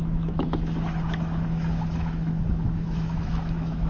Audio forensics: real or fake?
fake